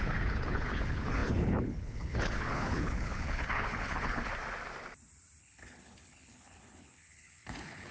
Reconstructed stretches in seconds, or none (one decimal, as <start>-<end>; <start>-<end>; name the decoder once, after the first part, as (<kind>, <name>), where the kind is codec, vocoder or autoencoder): 0.0-4.3 (codec, HILCodec); 5.4-7.9